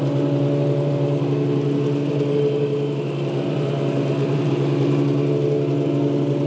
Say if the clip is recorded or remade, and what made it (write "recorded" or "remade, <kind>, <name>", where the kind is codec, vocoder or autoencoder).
recorded